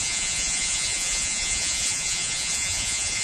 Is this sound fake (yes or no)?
yes